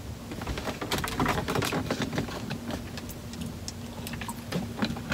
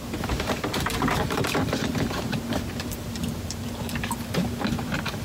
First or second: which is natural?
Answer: first